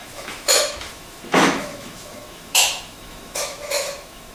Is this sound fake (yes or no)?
yes